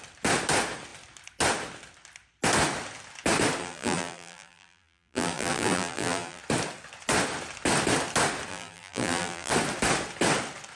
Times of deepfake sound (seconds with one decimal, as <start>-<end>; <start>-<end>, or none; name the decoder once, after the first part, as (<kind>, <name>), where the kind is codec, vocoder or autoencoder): 3.6-6.4 (vocoder, BigVGAN v2); 8.5-9.5